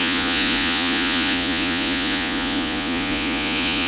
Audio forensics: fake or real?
fake